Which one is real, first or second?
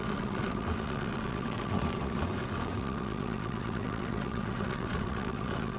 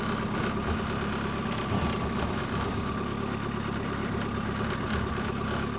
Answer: second